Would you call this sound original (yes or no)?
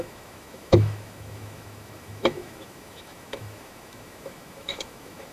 no